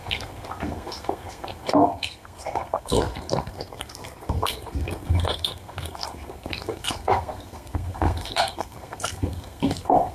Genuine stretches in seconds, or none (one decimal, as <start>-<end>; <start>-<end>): none